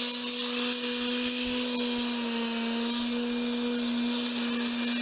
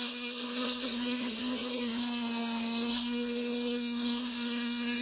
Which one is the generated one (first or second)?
second